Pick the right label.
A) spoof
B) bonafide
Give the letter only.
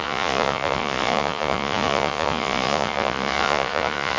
A